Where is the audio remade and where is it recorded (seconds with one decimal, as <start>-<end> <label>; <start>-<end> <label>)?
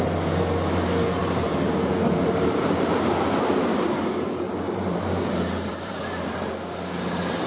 0.0-1.2 recorded; 1.2-3.3 remade; 3.3-3.7 recorded; 3.7-6.5 remade; 6.5-7.5 recorded